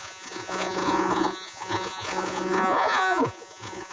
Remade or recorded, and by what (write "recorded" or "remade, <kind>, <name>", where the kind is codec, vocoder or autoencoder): remade, vocoder, Vocos